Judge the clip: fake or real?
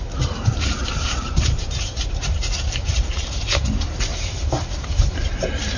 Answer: fake